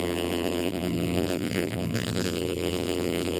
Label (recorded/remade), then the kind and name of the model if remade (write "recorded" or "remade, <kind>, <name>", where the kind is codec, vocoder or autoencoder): remade, vocoder, BigVGAN v2